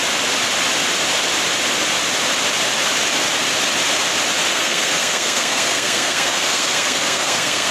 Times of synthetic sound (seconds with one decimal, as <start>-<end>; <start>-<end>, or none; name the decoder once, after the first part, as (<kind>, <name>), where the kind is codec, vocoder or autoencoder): 4.5-7.7 (codec, SNAC)